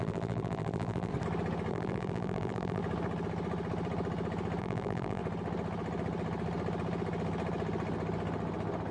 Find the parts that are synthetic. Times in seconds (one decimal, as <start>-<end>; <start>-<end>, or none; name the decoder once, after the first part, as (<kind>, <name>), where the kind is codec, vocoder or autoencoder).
0.0-1.1 (vocoder, BigVGAN v2); 1.7-2.8; 4.6-5.2